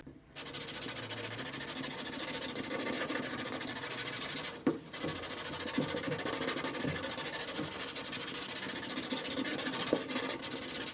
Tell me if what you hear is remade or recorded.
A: recorded